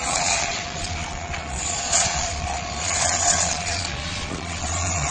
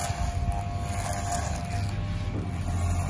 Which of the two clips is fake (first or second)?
first